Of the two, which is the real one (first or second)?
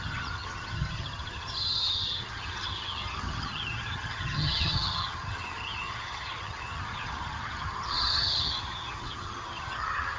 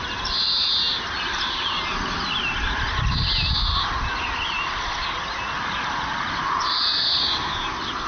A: second